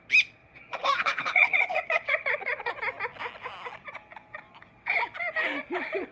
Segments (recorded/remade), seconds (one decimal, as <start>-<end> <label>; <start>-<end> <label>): 0.0-0.4 recorded; 0.4-2.7 remade; 2.7-6.1 recorded